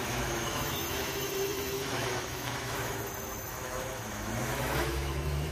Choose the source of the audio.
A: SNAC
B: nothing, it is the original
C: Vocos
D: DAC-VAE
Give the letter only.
D